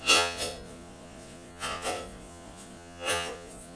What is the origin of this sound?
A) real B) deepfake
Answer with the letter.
B